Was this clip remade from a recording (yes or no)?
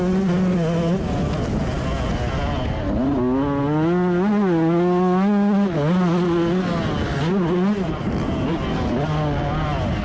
no